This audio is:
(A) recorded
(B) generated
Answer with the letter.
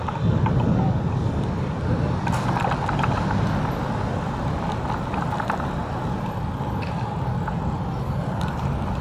A